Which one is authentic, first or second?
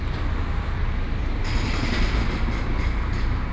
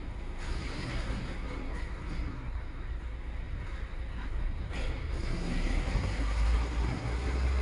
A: first